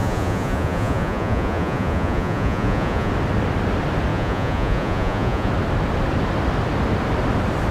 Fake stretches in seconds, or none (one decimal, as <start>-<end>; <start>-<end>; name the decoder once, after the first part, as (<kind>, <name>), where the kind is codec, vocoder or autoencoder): 0.0-3.1 (vocoder, Vocos); 4.1-5.5